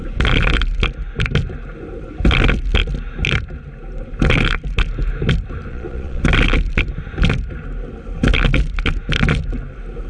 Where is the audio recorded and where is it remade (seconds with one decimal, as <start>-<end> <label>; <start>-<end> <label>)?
0.0-5.7 recorded; 5.7-6.2 remade; 6.2-10.1 recorded